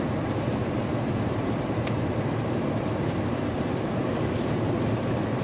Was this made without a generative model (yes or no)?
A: no